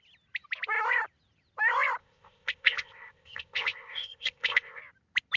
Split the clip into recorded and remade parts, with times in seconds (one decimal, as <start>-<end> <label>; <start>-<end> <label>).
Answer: 0.0-2.0 recorded; 2.0-4.8 remade; 4.8-5.4 recorded